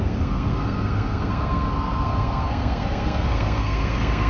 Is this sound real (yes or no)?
no